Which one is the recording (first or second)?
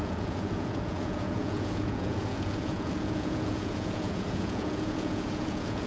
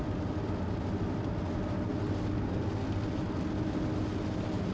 second